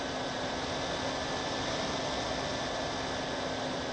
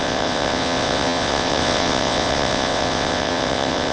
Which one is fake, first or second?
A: second